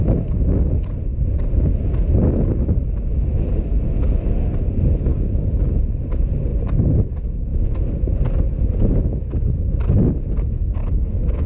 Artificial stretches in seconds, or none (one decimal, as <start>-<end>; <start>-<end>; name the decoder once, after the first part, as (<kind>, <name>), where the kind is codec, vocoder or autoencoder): 5.1-5.8 (codec, DAC); 10.8-11.5